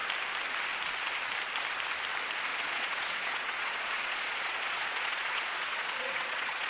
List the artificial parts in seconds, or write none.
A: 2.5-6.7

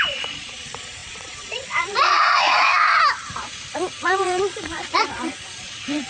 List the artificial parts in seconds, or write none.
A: 0.0-2.7; 3.4-6.1

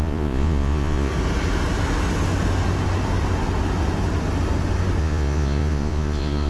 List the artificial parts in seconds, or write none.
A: 0.0-1.1; 5.0-6.5